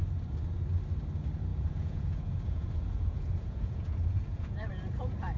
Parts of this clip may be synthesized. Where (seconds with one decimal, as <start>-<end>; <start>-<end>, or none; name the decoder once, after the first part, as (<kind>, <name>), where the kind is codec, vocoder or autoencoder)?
1.5-4.7 (vocoder, Vocos)